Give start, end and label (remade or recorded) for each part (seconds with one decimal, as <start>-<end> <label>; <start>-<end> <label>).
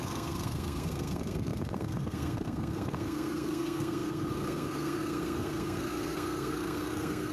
0.0-7.3 remade